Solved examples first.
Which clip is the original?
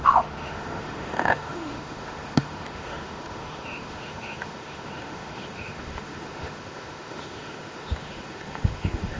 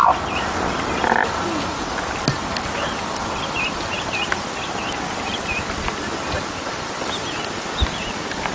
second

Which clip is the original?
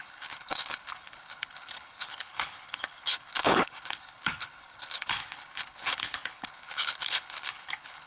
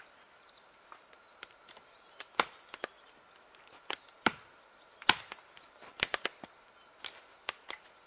second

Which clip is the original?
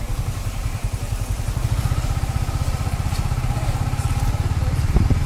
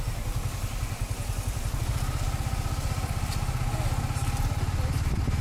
second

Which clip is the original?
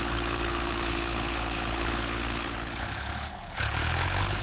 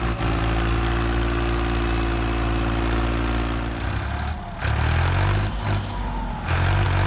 second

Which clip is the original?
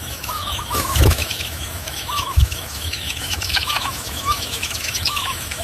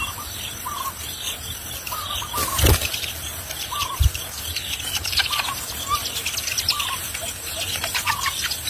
second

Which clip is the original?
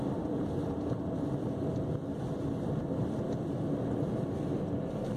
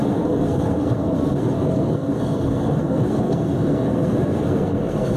first